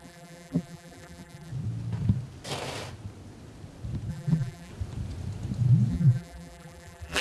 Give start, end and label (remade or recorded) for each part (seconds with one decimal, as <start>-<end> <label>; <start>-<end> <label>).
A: 0.0-1.5 remade; 1.5-4.1 recorded; 4.1-4.7 remade; 4.7-5.9 recorded; 5.9-7.2 remade